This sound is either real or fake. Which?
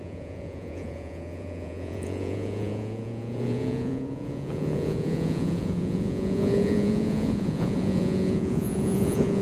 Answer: fake